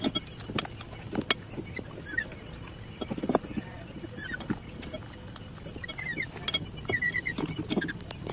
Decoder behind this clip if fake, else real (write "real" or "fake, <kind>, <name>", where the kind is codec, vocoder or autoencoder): real